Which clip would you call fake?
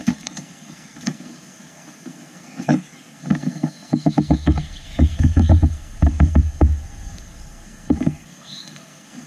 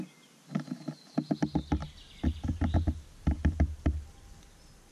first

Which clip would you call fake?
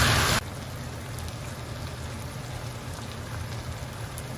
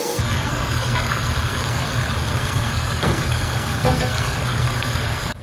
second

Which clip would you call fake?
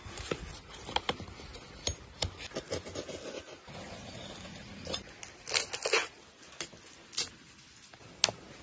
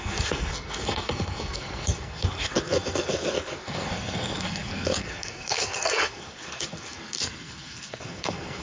second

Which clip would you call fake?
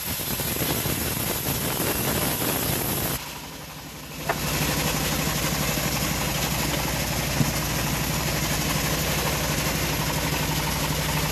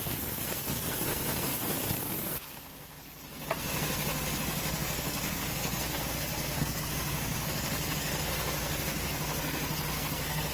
second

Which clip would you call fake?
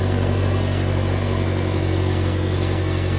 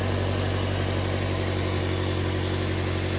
first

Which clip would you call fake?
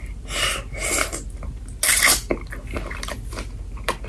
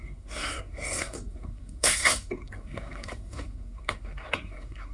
second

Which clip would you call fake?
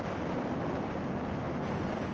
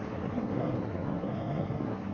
second